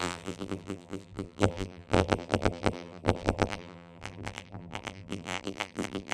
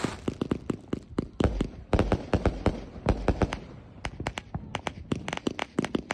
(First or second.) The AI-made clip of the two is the first